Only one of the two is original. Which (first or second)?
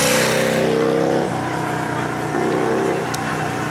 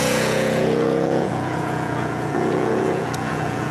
first